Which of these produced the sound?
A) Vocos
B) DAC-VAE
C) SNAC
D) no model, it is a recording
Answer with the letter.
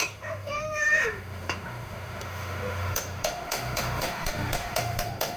B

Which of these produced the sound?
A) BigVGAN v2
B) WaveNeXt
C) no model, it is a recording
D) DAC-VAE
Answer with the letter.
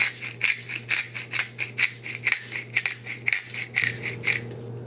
C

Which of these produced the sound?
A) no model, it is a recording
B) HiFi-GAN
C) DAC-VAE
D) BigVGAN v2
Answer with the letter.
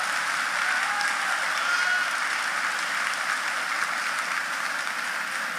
A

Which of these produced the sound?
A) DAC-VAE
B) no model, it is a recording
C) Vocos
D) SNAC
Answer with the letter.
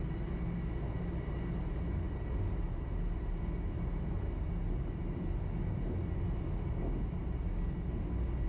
B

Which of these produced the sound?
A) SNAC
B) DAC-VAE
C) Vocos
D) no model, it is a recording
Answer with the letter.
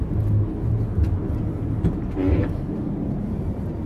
D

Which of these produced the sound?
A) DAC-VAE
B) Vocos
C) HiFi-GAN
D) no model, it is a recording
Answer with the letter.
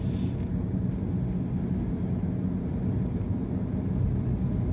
D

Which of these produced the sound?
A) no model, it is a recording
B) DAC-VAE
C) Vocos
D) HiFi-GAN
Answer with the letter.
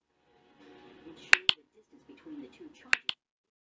A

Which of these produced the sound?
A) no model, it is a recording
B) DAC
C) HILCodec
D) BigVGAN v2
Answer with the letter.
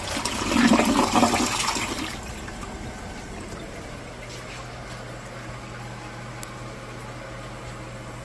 A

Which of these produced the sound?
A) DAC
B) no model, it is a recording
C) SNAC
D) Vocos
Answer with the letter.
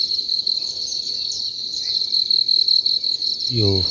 B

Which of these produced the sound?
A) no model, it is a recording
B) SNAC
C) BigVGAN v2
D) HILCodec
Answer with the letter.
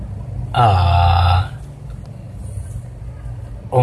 A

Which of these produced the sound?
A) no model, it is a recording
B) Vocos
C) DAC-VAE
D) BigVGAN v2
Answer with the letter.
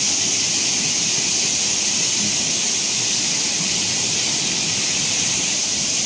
A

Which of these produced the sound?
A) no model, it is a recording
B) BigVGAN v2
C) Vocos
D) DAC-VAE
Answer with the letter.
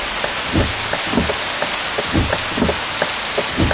A